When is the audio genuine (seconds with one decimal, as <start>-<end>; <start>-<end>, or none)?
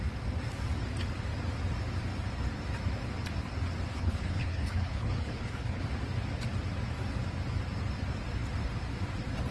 0.0-3.9; 5.8-9.5